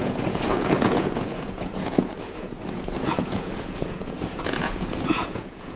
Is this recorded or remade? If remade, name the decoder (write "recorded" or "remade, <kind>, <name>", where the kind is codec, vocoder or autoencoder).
remade, vocoder, Vocos